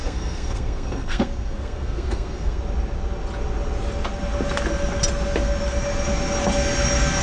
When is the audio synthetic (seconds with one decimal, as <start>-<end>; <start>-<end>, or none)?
0.0-2.6

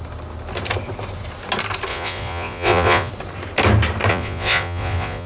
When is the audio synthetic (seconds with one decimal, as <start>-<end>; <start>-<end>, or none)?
1.9-3.1; 4.1-5.3

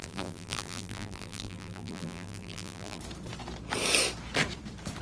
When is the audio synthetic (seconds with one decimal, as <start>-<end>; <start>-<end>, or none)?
0.0-3.0

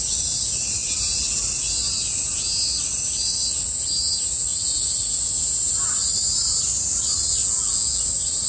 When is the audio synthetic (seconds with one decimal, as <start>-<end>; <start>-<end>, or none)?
7.4-8.0

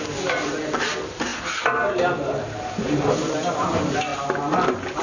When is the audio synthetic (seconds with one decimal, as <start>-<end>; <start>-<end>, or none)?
none

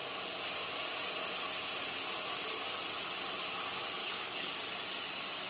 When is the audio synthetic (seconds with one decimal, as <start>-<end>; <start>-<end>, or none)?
4.0-4.5